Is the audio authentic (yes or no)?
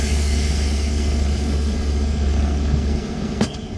no